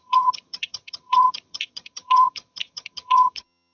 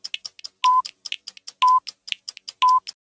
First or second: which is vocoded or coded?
first